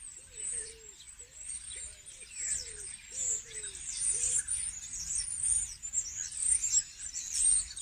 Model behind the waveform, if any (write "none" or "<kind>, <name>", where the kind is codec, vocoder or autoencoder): none